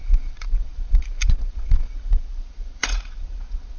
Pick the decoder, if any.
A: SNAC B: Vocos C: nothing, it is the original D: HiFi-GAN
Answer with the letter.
B